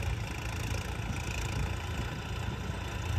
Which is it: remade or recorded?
recorded